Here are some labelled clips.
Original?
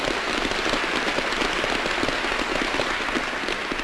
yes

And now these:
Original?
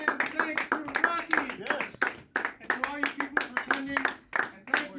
yes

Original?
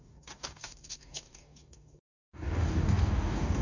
no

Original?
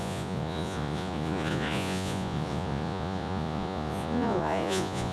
no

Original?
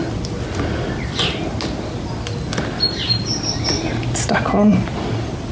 yes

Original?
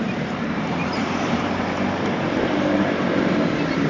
no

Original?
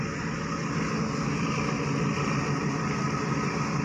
yes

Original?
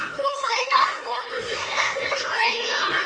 no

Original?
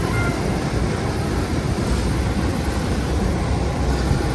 yes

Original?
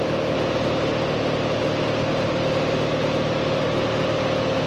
yes